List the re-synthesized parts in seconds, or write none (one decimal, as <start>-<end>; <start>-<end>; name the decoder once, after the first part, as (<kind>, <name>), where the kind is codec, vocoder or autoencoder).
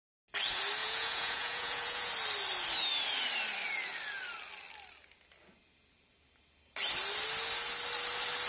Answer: 0.8-2.1 (vocoder, Vocos)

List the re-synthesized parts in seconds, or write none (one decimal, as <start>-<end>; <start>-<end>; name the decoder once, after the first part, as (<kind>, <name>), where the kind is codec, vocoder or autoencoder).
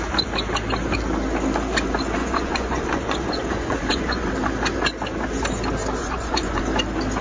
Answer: 2.2-4.3 (vocoder, Vocos); 6.0-6.6